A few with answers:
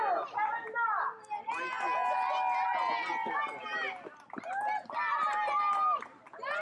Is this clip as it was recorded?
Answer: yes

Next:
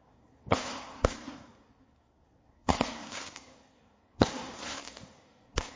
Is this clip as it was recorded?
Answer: no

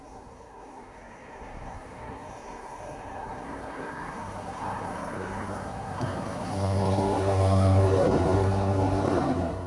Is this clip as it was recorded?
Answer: no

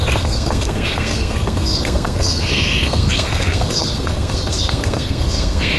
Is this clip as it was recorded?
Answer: no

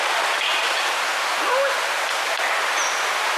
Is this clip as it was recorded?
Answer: yes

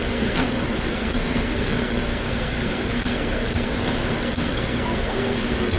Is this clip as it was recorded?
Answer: no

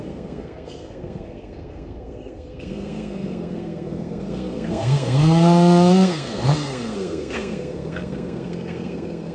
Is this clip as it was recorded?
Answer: no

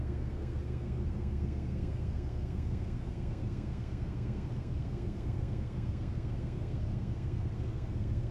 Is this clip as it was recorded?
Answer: no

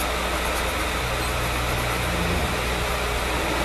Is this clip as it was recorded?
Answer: yes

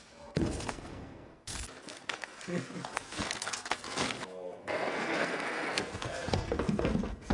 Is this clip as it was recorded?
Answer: no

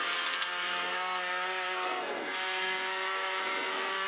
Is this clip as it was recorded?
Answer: no